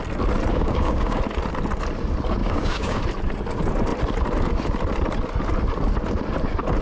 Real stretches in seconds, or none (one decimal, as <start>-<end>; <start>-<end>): 0.0-0.5; 1.2-2.4; 3.0-6.8